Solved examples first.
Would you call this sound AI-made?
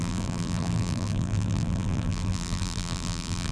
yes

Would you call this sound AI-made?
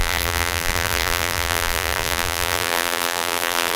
yes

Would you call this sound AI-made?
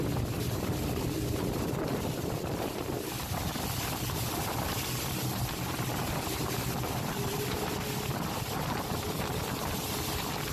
yes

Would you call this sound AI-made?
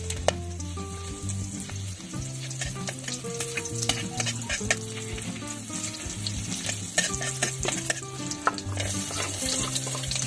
no